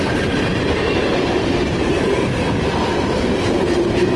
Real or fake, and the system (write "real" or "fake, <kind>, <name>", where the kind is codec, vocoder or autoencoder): fake, vocoder, BigVGAN v2